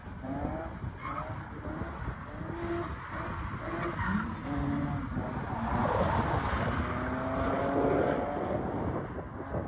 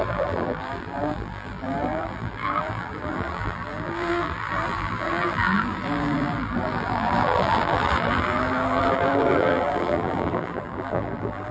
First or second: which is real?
first